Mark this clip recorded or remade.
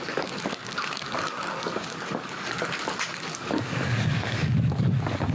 remade